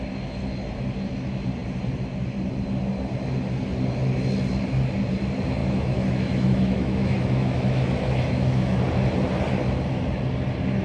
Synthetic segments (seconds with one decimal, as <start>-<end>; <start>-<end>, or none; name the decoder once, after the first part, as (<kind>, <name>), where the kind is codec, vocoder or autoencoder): 5.6-8.8 (autoencoder, DAC-VAE)